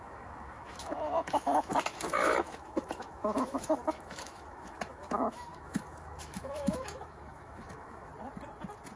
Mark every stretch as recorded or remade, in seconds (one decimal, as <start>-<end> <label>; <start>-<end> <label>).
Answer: 0.0-8.1 remade; 8.1-9.0 recorded